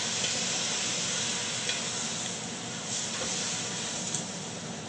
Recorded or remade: recorded